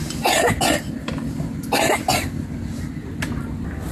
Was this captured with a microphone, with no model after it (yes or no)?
yes